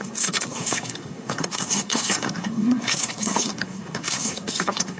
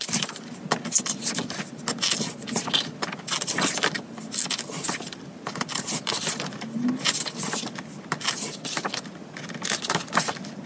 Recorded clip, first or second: second